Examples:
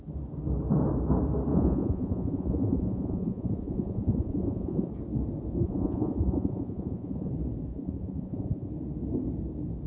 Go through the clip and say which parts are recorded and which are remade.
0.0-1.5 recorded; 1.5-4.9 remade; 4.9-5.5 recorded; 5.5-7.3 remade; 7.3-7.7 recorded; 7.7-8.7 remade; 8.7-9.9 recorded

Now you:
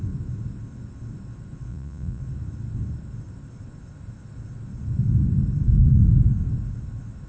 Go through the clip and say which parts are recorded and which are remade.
0.0-1.7 recorded; 1.7-2.2 remade; 2.2-7.3 recorded